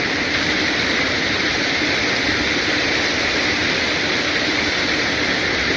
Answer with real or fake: real